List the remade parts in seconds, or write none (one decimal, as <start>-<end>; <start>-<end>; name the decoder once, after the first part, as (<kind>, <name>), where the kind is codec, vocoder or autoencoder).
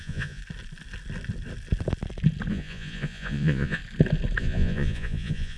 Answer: 0.0-0.4 (vocoder, Vocos); 2.5-3.8; 4.4-5.6